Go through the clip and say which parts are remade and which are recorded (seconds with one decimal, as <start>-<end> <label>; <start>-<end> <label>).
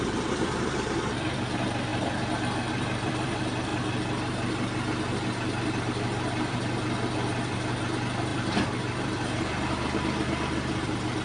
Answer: 0.0-1.9 remade; 1.9-2.7 recorded; 2.7-3.7 remade; 3.7-5.8 recorded; 5.8-11.2 remade